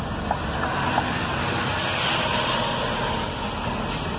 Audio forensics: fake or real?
real